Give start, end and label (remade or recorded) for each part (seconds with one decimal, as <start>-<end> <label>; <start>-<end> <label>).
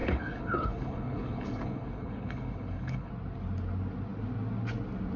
0.0-3.1 remade; 3.1-5.2 recorded